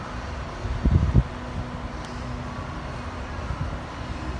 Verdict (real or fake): real